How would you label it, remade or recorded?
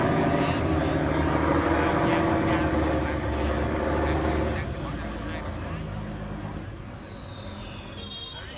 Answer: recorded